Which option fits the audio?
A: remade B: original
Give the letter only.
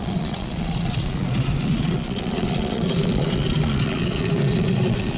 A